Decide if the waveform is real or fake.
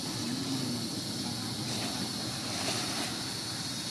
real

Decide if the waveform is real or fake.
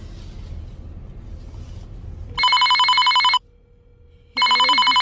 real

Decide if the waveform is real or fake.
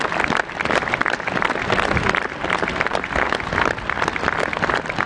real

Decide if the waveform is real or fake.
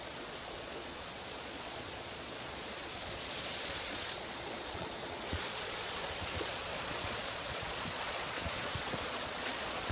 fake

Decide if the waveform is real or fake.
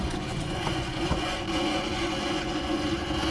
fake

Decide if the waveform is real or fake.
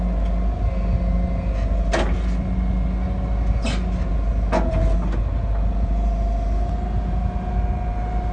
real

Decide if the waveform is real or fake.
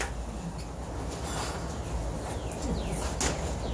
real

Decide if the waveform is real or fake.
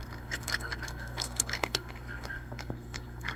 fake